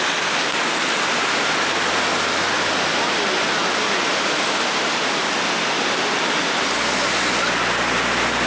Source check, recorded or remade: recorded